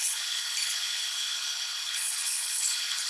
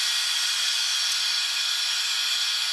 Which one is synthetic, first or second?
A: first